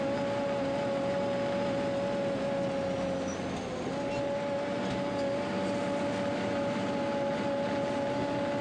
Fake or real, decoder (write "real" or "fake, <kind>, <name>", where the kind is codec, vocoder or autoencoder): real